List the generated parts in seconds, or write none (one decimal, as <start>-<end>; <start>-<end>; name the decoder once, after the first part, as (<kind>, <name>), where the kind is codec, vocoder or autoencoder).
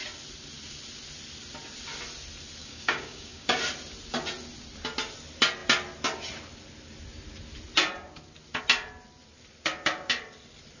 2.6-3.6 (codec, DAC)